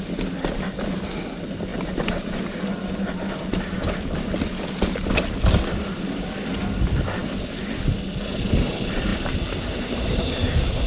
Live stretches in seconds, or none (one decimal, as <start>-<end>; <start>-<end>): 0.0-1.7; 2.5-9.1